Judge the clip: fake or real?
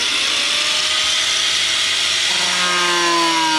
real